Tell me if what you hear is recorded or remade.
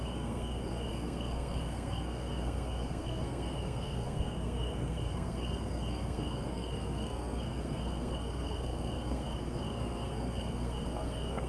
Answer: remade